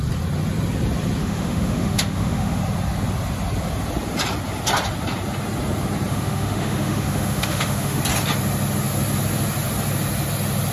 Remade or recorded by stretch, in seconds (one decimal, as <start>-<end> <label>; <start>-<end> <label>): 0.0-1.2 recorded; 1.2-2.6 remade; 2.6-6.1 recorded; 6.1-8.0 remade; 8.0-10.7 recorded